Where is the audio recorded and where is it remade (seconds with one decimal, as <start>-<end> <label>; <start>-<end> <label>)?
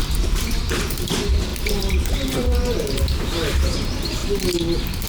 0.0-0.6 recorded; 0.6-4.2 remade; 4.2-5.1 recorded